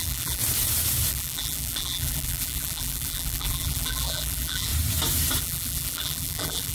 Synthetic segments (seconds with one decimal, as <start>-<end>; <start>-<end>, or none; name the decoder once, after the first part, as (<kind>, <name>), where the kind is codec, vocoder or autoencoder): 0.0-0.4 (vocoder, BigVGAN v2); 1.1-4.7; 5.4-6.7